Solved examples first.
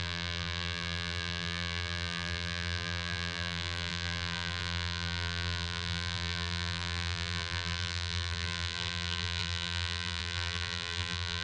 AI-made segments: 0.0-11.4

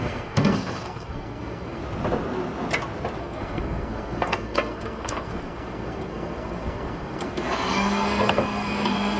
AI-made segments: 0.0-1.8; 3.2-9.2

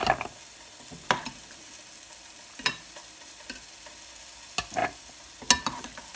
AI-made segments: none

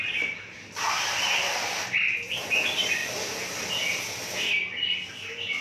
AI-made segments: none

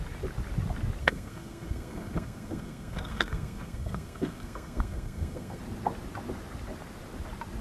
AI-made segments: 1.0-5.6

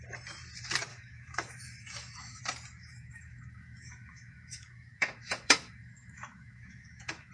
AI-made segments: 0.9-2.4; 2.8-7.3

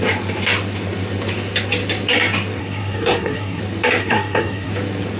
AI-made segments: 2.6-3.6; 4.0-4.7